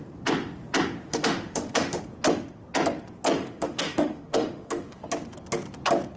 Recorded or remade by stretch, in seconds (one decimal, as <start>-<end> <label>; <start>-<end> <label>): 0.0-1.1 recorded; 1.1-2.0 remade; 2.0-3.4 recorded; 3.4-5.0 remade; 5.0-6.2 recorded